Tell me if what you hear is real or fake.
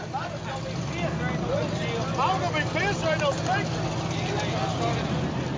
real